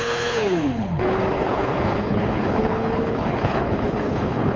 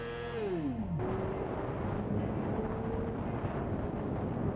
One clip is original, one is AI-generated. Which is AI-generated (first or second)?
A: first